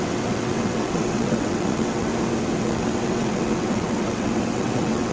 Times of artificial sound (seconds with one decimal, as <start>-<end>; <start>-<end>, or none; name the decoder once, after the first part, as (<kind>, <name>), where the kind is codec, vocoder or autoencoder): 0.0-2.1 (vocoder, WaveNeXt); 2.6-5.1